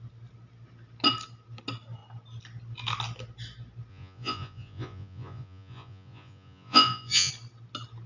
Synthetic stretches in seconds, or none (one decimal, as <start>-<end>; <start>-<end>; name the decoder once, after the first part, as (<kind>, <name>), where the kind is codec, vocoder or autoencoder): 3.9-7.3 (vocoder, Vocos)